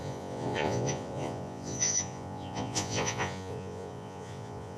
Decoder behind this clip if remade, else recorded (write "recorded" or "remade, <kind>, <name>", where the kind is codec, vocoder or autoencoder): remade, vocoder, Vocos